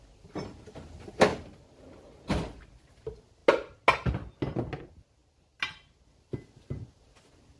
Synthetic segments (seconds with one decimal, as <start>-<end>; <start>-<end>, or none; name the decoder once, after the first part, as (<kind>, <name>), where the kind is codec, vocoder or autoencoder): none